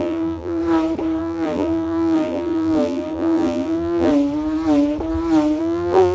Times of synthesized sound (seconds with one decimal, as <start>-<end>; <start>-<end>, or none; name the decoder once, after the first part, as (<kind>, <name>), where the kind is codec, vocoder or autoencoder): 0.0-0.6 (vocoder, BigVGAN v2); 1.2-4.1; 5.6-6.1